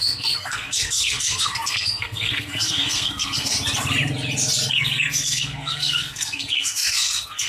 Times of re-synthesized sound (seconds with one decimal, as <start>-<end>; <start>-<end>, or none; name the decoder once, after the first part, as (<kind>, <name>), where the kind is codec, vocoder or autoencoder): 0.0-3.5 (codec, SNAC); 4.7-7.5